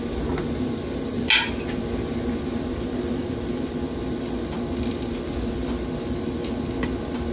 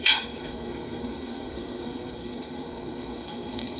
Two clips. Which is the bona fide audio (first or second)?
first